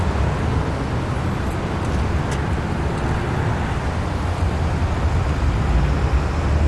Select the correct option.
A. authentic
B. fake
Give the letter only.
A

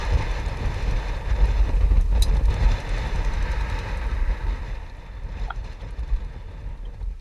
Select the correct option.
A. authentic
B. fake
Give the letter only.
A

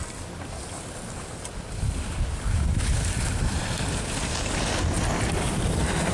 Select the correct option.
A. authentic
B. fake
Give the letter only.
A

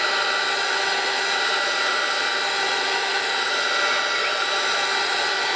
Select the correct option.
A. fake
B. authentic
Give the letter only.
B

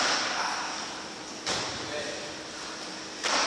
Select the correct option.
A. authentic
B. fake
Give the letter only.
A